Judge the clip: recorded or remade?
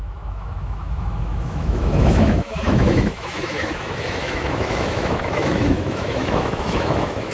remade